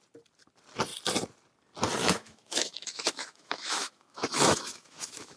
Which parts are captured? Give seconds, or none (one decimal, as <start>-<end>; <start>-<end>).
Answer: 0.0-2.0